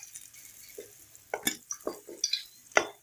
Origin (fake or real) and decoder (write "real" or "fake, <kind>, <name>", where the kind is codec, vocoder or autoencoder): real